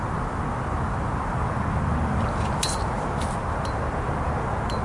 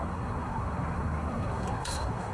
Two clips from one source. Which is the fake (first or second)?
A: second